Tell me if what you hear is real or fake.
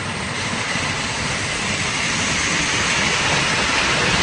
real